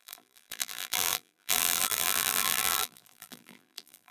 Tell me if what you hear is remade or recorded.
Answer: remade